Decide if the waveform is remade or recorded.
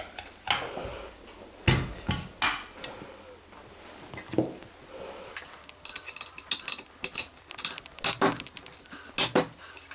recorded